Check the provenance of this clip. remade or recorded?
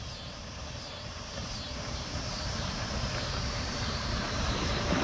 remade